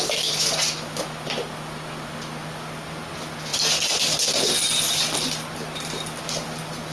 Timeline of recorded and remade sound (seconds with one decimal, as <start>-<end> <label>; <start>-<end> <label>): 0.0-6.9 recorded